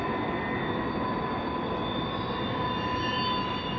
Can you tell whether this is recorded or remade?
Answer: recorded